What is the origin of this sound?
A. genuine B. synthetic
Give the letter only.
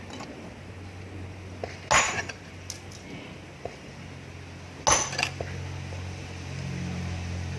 A